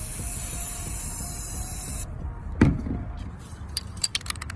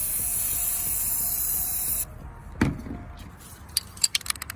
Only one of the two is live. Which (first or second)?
second